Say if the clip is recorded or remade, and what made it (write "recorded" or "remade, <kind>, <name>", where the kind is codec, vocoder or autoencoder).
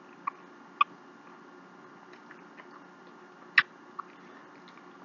recorded